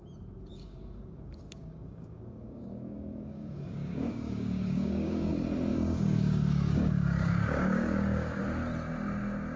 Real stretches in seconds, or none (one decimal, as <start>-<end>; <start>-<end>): 0.0-0.5; 5.3-5.7; 8.4-9.6